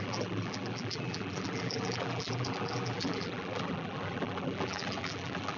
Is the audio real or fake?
fake